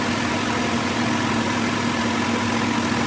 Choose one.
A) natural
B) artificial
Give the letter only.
A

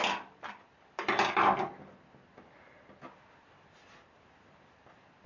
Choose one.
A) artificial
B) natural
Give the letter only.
B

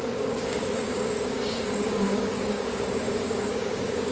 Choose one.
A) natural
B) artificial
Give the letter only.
B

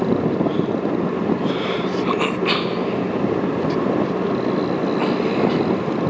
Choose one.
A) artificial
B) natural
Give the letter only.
B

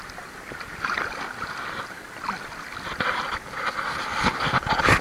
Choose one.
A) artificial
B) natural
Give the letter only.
B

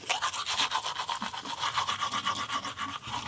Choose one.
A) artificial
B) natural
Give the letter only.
B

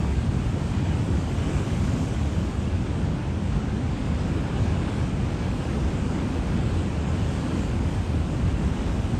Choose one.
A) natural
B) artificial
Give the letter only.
B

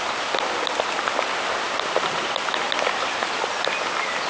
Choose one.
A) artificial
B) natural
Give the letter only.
B